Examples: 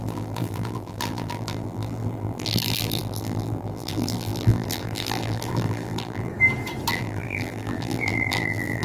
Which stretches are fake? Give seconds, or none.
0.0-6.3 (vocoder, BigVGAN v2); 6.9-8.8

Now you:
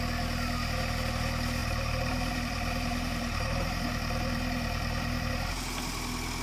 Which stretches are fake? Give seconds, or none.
1.6-5.3 (vocoder, BigVGAN v2)

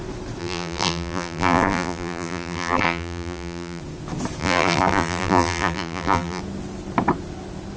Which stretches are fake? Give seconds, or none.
0.4-3.8 (vocoder, BigVGAN v2); 4.4-6.4

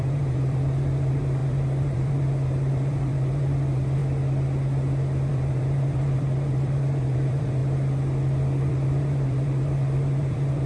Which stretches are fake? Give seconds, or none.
0.0-4.0 (vocoder, BigVGAN v2); 5.3-7.6; 8.7-10.7

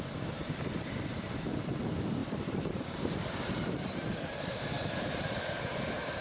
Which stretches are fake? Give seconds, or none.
2.2-5.4 (vocoder, BigVGAN v2)